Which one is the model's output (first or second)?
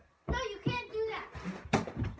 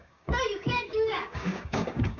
second